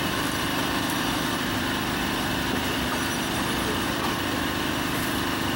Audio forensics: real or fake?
fake